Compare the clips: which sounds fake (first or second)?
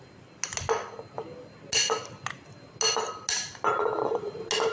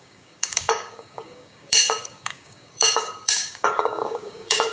second